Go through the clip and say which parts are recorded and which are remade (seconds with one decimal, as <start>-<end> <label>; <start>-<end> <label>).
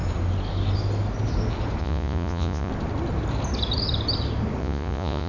0.0-1.8 recorded; 1.8-2.7 remade; 2.7-4.6 recorded; 4.6-5.3 remade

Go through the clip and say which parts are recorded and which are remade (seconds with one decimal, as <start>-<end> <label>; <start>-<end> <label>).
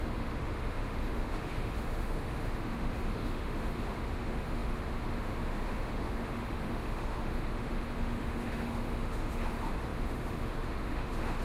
0.0-11.4 remade